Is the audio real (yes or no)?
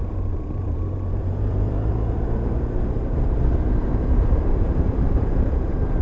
no